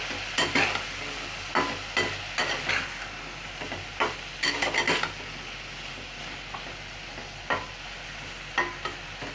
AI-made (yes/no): no